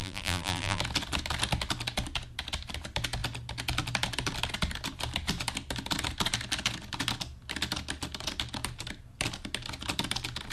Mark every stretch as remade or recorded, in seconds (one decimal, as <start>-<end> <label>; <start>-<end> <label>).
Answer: 0.0-0.8 remade; 0.8-10.5 recorded